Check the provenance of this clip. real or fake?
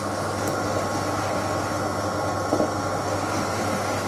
real